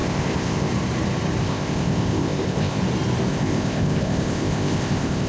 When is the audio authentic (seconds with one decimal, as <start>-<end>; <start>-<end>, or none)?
0.7-1.4; 2.8-3.3